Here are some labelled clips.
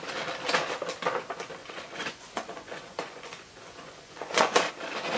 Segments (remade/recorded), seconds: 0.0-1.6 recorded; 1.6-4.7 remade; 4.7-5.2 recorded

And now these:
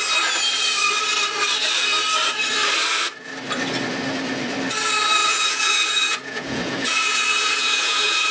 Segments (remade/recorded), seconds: 0.0-5.2 recorded; 5.2-8.3 remade

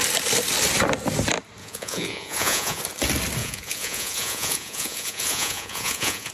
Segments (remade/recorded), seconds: 0.0-1.6 recorded; 1.6-2.8 remade; 2.8-3.4 recorded; 3.4-6.3 remade

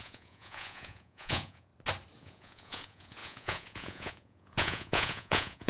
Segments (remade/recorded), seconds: 0.0-1.7 remade; 1.7-2.2 recorded; 2.2-5.7 remade

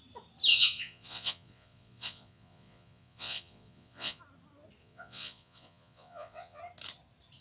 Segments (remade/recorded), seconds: 0.0-0.5 recorded; 0.5-4.2 remade; 4.2-4.8 recorded; 4.8-6.6 remade; 6.6-7.4 recorded

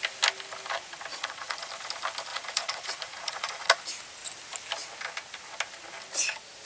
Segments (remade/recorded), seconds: 0.0-1.1 recorded; 1.1-1.7 remade; 1.7-2.3 recorded; 2.3-3.8 remade; 3.8-6.7 recorded

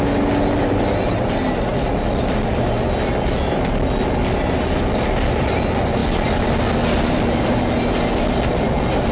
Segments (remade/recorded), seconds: 0.0-9.1 recorded